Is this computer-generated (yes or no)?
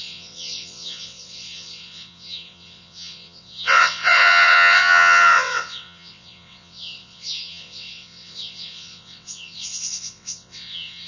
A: yes